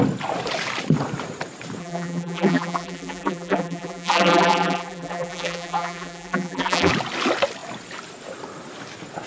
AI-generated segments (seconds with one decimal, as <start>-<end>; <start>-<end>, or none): 1.8-6.9